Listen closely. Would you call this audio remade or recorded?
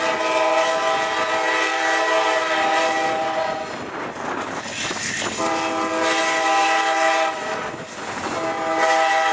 recorded